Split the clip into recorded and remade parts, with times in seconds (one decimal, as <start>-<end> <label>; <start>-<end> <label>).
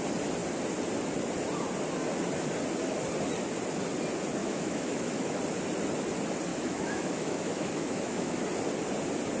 0.0-4.4 recorded; 4.4-5.4 remade; 5.4-6.5 recorded; 6.5-8.4 remade; 8.4-9.4 recorded